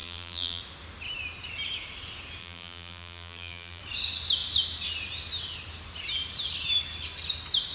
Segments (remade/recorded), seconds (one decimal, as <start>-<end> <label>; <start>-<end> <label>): 0.0-0.6 remade; 0.6-2.4 recorded; 2.4-3.8 remade; 3.8-7.7 recorded